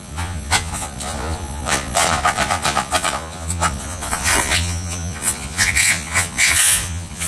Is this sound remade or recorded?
remade